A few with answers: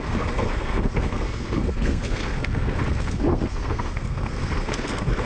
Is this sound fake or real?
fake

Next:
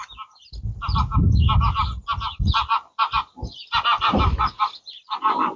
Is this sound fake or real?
real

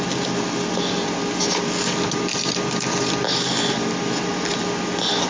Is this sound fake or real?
real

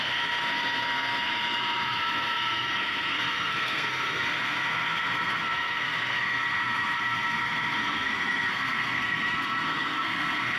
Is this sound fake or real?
fake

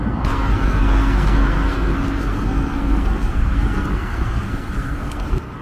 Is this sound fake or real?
fake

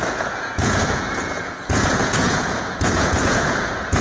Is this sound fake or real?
fake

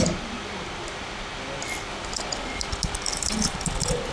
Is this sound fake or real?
real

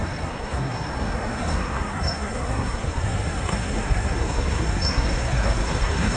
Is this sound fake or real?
fake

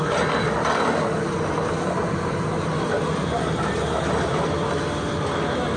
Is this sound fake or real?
real